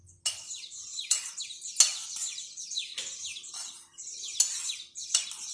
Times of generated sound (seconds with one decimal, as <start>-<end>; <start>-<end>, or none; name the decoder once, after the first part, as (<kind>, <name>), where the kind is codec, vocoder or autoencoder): 0.9-1.4 (vocoder, BigVGAN v2)